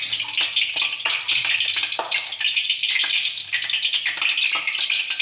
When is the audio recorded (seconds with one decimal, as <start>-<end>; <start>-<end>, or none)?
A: 0.0-5.2